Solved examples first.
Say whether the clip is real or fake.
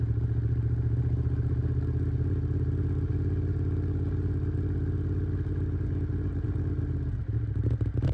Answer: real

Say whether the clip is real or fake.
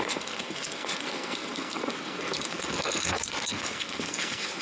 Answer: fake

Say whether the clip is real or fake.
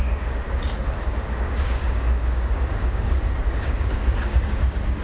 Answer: fake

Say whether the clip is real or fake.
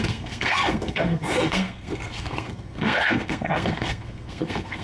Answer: fake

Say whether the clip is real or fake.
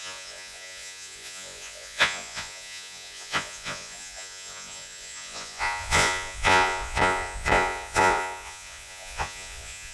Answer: fake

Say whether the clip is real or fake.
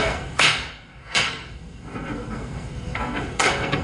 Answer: fake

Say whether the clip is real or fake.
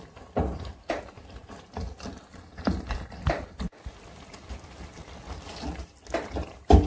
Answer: real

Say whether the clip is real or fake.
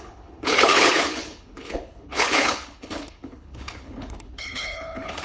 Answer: fake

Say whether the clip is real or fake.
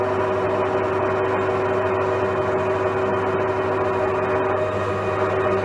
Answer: real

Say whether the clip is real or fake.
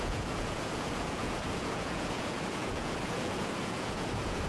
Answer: fake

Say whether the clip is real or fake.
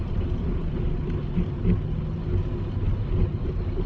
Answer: real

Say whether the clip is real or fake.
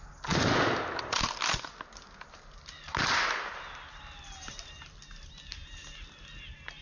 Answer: real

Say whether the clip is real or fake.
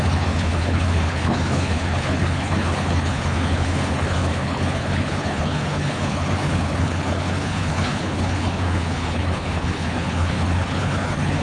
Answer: fake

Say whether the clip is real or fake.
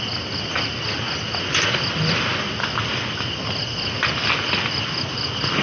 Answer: real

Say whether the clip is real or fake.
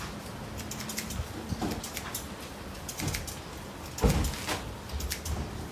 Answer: real